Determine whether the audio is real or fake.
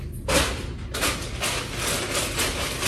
real